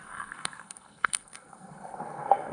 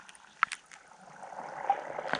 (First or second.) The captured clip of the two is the second